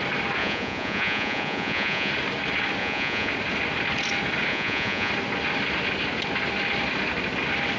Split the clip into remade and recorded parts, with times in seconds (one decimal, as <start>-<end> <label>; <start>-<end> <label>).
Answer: 0.0-0.4 recorded; 0.4-2.1 remade; 2.1-2.8 recorded; 2.8-3.3 remade; 3.3-4.5 recorded; 4.5-5.1 remade; 5.1-7.8 recorded